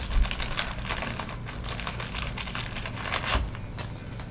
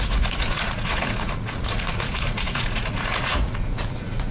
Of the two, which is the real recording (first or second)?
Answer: first